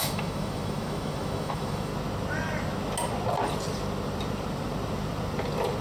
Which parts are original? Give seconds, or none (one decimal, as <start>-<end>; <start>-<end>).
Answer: 1.9-5.8